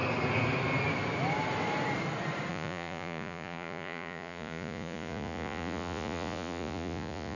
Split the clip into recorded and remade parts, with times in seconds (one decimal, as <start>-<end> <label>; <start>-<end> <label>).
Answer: 0.0-2.5 recorded; 2.5-7.4 remade